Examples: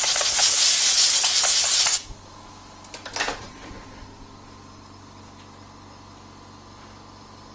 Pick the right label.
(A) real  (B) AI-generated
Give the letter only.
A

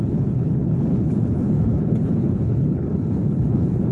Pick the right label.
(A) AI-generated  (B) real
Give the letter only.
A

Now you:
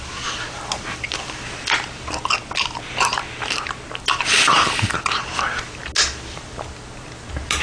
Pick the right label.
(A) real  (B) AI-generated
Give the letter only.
A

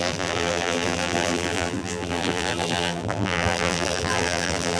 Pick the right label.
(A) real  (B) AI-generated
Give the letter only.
B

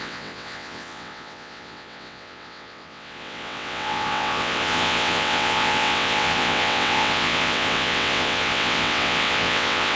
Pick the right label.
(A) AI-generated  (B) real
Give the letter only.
A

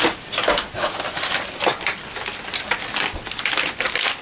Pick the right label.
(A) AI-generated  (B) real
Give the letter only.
B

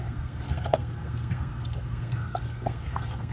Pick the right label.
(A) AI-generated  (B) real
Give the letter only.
A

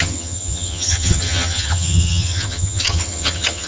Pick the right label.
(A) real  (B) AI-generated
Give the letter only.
B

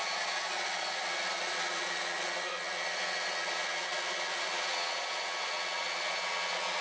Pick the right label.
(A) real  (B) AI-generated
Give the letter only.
B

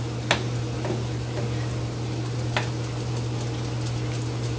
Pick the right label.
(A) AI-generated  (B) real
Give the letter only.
B